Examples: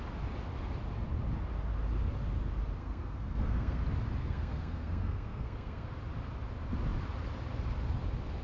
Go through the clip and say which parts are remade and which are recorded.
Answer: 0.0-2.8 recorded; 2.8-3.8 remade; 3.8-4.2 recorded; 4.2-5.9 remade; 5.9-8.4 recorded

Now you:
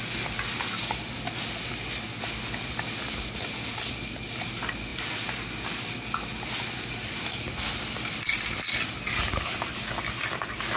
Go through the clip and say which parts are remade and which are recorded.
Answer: 0.0-10.8 recorded

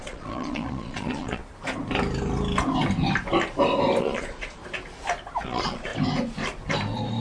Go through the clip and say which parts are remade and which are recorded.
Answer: 0.0-1.4 remade; 1.4-4.0 recorded; 4.0-4.6 remade; 4.6-5.4 recorded; 5.4-5.9 remade; 5.9-7.2 recorded

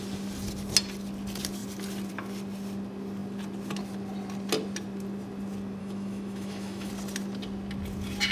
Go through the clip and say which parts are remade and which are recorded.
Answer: 0.0-5.8 recorded; 5.8-6.9 remade; 6.9-8.3 recorded

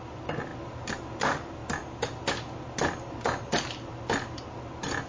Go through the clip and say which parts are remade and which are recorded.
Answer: 0.0-5.1 recorded

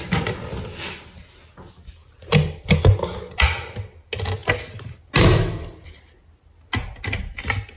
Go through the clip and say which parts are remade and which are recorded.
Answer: 0.0-7.8 recorded

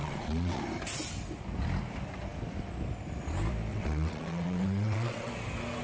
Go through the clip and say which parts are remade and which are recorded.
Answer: 0.0-0.6 remade; 0.6-3.7 recorded; 3.7-5.3 remade; 5.3-5.8 recorded

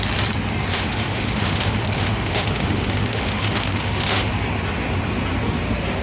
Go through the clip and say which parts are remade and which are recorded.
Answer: 0.0-0.7 recorded; 0.7-4.3 remade; 4.3-6.0 recorded